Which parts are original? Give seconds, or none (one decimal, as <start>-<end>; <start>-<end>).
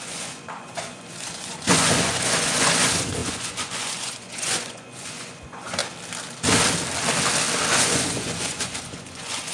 5.8-7.7